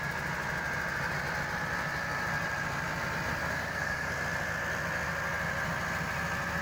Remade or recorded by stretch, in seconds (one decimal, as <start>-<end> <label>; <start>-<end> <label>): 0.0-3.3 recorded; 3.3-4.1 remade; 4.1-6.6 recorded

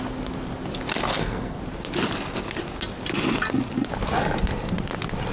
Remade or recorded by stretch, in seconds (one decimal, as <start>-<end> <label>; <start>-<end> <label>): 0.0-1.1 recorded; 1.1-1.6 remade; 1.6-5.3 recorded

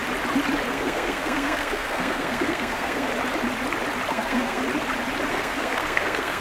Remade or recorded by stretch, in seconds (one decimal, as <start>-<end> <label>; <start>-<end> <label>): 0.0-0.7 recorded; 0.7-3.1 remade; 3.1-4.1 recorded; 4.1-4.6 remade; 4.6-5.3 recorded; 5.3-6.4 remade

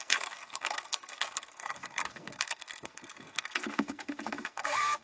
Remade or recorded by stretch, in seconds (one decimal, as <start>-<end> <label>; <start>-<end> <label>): 0.0-5.0 remade